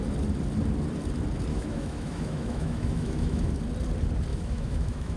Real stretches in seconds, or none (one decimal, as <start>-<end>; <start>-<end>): 0.0-1.5; 3.5-4.3